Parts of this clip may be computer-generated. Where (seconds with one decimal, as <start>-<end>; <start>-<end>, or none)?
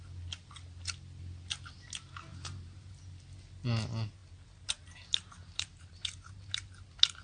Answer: 2.3-3.0; 4.2-6.8